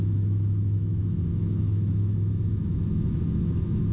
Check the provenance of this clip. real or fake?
fake